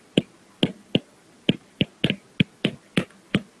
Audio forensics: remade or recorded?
recorded